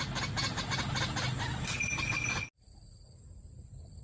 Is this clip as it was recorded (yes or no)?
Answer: yes